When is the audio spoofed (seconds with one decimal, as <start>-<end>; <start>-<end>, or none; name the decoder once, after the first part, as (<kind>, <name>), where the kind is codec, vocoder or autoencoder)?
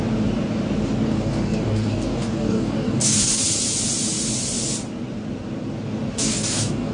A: 1.1-3.4 (codec, DAC); 6.1-6.9